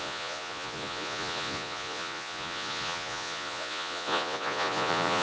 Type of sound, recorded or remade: remade